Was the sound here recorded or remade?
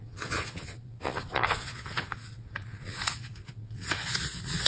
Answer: remade